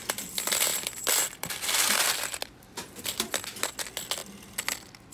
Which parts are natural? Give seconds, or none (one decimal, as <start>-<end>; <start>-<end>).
4.2-5.1